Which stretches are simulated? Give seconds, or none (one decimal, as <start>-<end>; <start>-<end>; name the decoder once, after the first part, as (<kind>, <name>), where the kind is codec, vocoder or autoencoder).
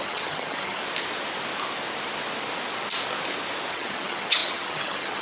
0.0-0.8 (vocoder, HiFi-GAN); 3.7-5.2